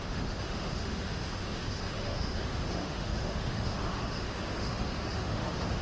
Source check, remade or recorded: remade